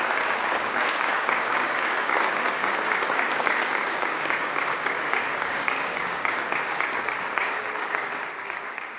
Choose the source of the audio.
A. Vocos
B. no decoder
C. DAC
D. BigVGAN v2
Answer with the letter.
C